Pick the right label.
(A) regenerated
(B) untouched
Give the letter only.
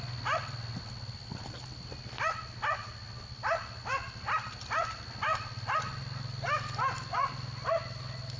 B